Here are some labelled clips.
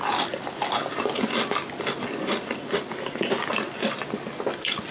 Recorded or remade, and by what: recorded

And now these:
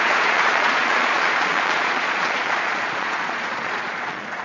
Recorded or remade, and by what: remade, vocoder, Vocos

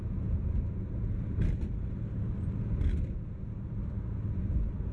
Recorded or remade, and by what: recorded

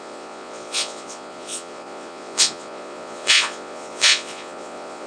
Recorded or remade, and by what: remade, vocoder, Vocos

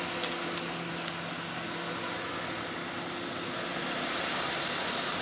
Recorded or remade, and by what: recorded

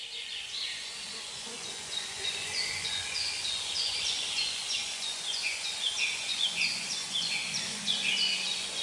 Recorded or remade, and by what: remade, vocoder, Vocos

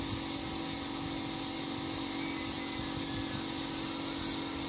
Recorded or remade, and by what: recorded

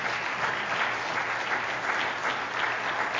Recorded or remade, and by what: recorded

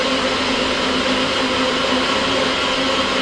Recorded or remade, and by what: recorded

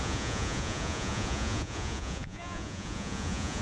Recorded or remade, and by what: remade, vocoder, Vocos